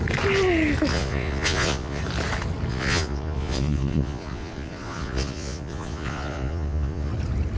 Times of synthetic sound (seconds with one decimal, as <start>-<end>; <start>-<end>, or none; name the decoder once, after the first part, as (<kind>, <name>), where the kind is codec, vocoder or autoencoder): 0.9-2.0 (vocoder, Vocos); 2.7-7.1